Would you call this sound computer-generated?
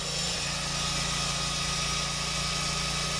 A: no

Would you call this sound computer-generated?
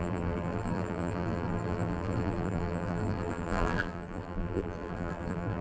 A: yes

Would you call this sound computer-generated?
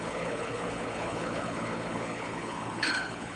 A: yes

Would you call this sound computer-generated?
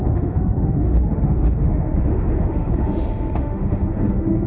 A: yes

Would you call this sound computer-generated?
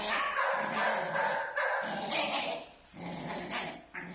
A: no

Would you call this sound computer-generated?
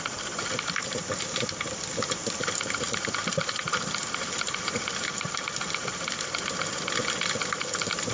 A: no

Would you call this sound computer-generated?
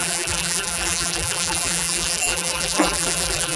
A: yes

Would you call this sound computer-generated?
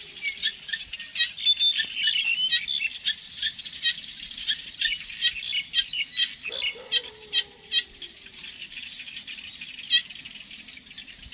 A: no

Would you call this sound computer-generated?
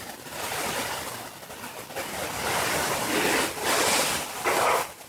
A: no